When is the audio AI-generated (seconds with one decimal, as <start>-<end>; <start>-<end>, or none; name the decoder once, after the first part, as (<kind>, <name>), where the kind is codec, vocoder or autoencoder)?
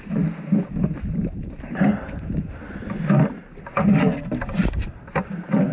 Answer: none